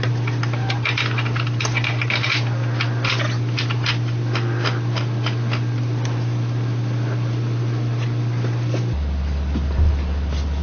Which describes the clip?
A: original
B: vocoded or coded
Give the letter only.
B